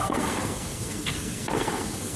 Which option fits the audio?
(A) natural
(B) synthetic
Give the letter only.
B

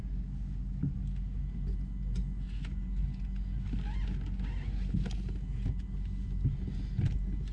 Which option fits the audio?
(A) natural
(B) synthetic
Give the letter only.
A